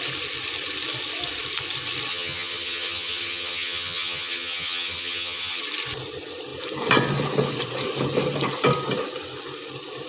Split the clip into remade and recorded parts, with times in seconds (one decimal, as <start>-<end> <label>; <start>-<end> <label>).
0.0-2.1 recorded; 2.1-5.6 remade; 5.6-10.1 recorded